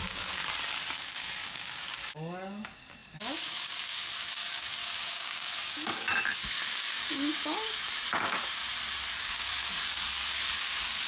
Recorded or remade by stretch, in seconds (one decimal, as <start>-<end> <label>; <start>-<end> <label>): 0.0-0.4 remade; 0.4-1.0 recorded; 1.0-8.6 remade; 8.6-9.1 recorded; 9.1-11.1 remade